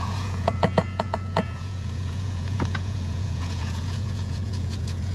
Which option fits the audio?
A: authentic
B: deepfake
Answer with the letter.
B